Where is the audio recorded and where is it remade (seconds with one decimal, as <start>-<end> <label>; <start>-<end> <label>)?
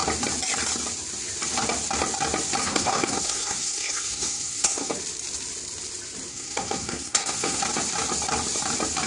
0.0-2.6 recorded; 2.6-4.9 remade; 4.9-6.3 recorded; 6.3-7.6 remade; 7.6-9.1 recorded